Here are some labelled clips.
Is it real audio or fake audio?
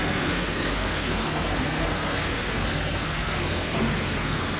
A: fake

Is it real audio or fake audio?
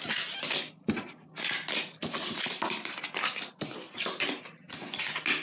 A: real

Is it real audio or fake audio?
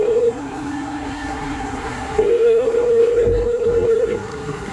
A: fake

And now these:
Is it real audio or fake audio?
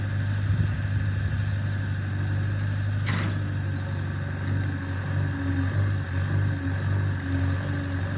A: real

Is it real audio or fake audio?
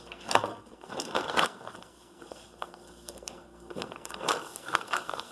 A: fake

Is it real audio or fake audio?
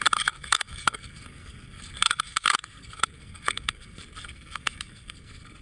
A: fake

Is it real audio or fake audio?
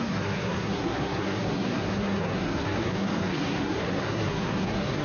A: fake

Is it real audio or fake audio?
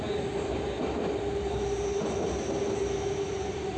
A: real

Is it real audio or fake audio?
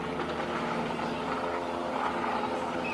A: real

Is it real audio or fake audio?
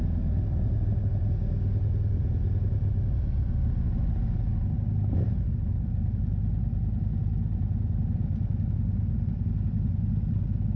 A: real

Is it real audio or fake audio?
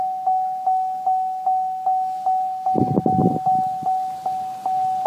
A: real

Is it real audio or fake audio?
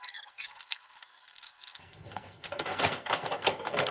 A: fake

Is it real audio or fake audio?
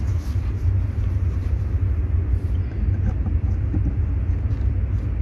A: real